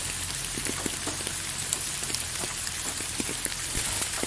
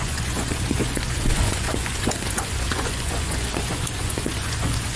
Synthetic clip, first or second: second